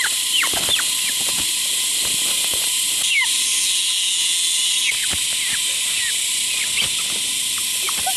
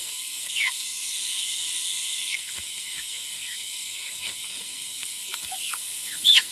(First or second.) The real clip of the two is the first